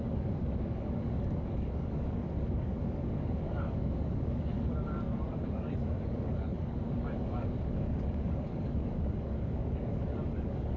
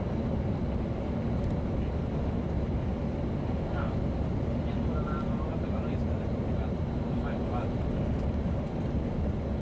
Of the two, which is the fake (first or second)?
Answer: first